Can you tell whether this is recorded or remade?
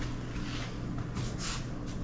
recorded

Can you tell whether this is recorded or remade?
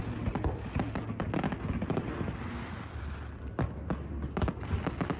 recorded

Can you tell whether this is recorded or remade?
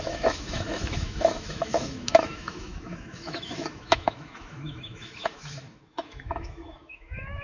remade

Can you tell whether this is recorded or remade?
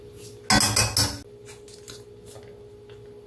recorded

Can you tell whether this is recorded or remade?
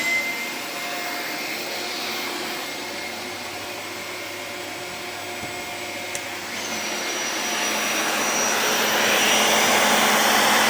recorded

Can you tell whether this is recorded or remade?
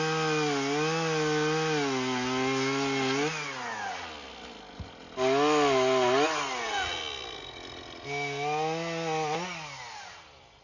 recorded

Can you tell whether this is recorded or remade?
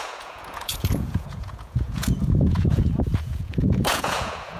remade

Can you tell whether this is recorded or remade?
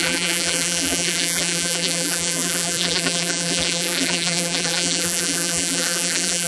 remade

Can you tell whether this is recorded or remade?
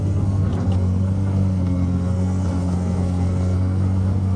remade